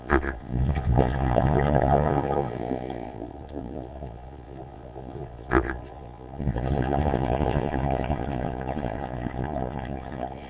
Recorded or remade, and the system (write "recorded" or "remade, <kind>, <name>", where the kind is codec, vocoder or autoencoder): remade, vocoder, Vocos